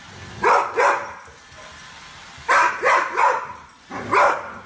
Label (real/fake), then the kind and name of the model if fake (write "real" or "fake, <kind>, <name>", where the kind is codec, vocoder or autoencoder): real